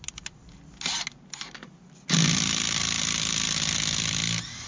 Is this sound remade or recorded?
recorded